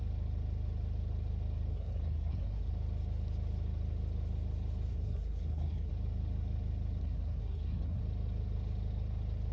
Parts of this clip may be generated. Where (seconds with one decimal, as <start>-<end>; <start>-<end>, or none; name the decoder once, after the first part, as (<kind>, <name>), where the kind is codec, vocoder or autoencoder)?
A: 1.7-2.7 (codec, SNAC); 4.9-5.9; 7.0-8.0